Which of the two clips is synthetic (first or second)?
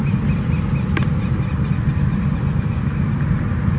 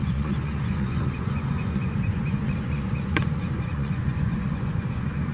second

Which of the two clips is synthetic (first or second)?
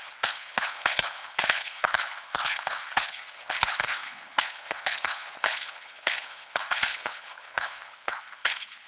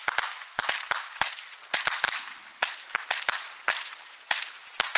first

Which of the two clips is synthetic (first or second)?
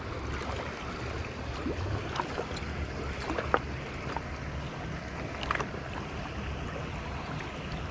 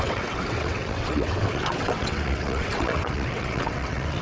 second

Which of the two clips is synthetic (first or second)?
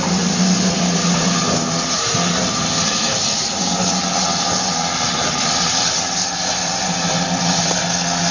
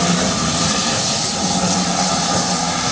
second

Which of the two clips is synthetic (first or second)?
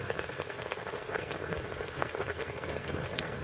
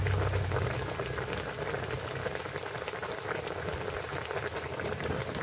first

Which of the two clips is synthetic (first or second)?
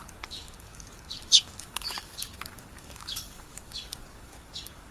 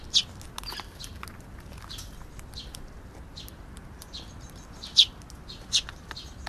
first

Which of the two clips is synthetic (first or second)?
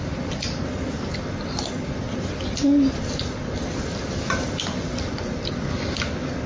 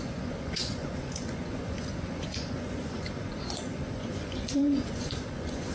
second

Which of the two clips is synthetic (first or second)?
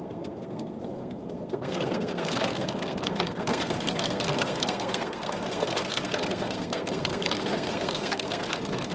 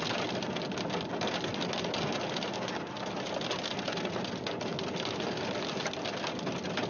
first